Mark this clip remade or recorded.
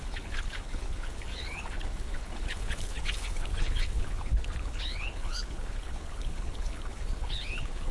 remade